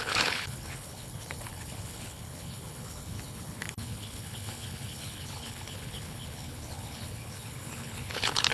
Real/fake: fake